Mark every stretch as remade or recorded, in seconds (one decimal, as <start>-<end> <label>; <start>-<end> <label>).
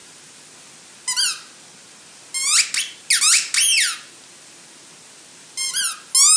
0.0-6.4 recorded